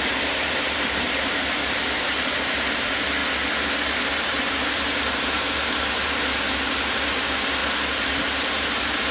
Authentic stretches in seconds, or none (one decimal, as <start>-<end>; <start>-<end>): 3.2-4.2; 7.6-8.2